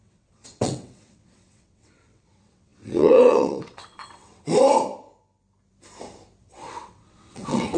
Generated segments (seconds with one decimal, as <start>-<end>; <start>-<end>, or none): 0.0-4.5; 6.4-7.8